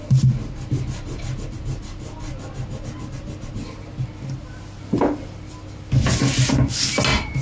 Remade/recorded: recorded